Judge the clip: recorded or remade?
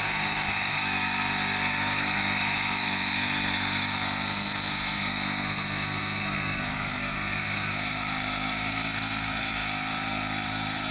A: remade